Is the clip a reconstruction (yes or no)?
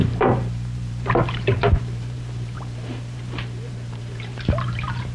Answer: yes